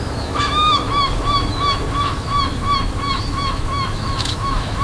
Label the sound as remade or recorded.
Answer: remade